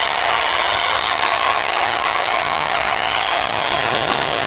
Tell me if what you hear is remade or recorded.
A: remade